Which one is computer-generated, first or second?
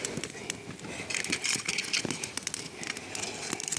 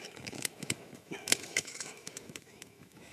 second